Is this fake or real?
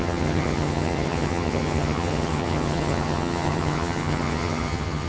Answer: fake